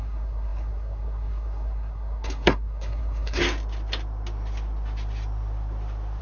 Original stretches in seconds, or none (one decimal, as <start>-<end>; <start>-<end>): 3.4-6.2